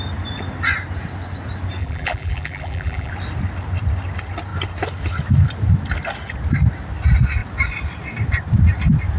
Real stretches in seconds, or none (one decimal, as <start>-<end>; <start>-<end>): 0.0-1.8; 3.1-9.2